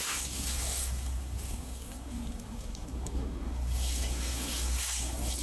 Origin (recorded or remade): remade